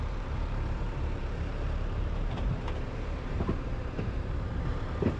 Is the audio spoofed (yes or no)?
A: yes